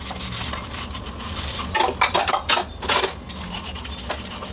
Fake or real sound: real